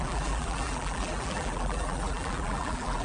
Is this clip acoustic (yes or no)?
no